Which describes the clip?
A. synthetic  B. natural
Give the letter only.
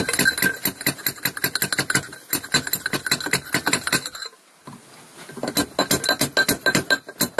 B